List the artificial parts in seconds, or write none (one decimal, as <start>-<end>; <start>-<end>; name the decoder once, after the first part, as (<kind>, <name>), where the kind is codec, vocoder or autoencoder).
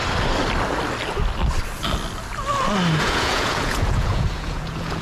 3.0-5.0 (vocoder, Vocos)